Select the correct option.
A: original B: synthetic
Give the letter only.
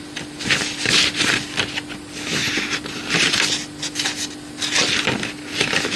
A